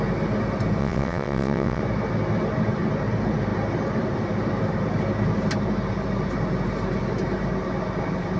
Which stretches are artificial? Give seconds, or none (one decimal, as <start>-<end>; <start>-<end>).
0.8-1.8